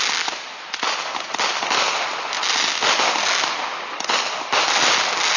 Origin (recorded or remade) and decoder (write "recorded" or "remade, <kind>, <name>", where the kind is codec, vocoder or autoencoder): recorded